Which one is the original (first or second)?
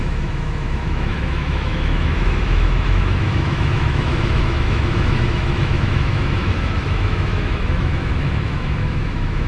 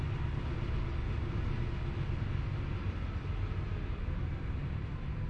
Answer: second